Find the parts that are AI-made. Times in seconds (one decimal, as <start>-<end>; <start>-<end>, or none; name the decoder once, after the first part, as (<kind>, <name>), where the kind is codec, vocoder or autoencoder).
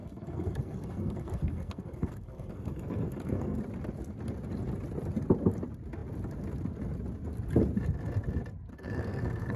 0.0-3.6 (codec, SNAC); 8.7-9.6